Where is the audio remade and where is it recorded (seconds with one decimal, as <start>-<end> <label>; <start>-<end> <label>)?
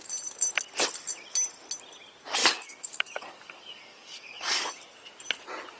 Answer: 0.0-2.4 recorded; 2.4-4.7 remade; 4.7-5.8 recorded